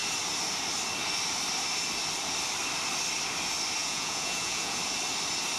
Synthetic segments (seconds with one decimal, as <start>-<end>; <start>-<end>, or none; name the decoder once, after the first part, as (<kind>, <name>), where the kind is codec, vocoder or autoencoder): 3.8-4.8 (vocoder, Vocos)